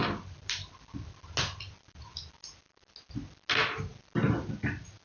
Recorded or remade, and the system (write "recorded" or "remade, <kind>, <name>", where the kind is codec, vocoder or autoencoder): recorded